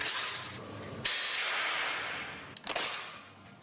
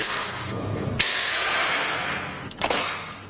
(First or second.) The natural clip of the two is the first